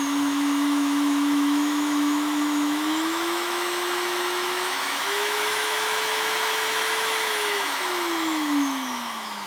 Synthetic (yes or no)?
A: yes